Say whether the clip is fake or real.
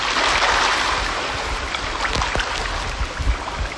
real